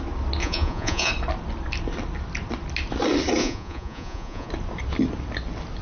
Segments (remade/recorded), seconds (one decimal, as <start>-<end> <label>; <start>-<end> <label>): 0.0-0.4 recorded; 0.4-1.1 remade; 1.1-3.4 recorded; 3.4-4.5 remade; 4.5-5.8 recorded